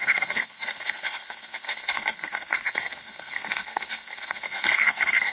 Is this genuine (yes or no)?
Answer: no